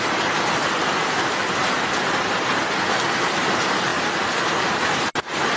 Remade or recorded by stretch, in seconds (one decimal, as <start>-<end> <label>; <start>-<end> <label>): 0.0-5.6 recorded